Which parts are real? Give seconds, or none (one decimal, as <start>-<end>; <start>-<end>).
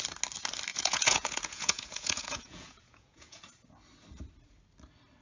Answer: 0.0-0.7; 3.4-5.2